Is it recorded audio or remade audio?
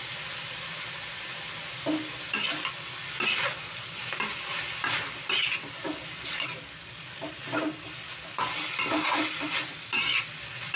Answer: recorded